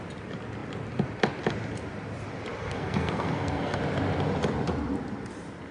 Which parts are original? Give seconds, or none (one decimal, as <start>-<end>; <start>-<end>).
0.0-2.6; 3.8-5.7

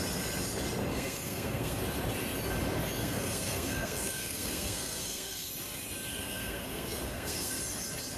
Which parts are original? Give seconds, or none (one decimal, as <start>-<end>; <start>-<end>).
0.0-0.9; 1.8-3.0; 5.5-6.1; 7.6-8.2

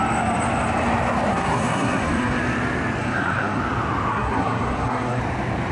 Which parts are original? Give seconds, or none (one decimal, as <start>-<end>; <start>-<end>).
0.0-1.3; 2.4-3.0; 3.6-4.1; 5.2-5.7

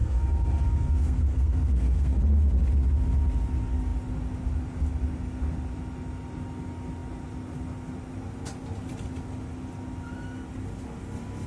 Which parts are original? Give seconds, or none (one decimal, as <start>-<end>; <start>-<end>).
2.2-11.5

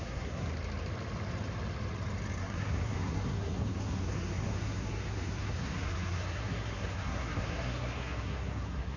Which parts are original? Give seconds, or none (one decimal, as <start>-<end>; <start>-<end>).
0.5-2.4

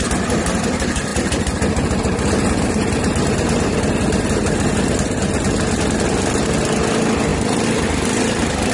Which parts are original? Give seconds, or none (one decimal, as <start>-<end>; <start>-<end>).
0.0-8.7

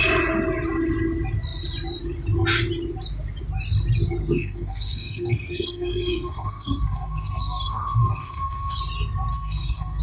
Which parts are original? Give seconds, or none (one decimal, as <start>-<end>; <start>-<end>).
0.0-4.2; 8.8-9.3